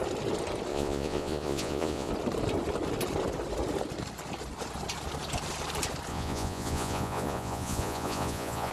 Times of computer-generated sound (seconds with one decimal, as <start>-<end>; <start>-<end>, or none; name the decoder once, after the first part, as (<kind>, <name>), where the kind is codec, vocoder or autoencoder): 0.7-2.1 (vocoder, Vocos); 6.1-8.7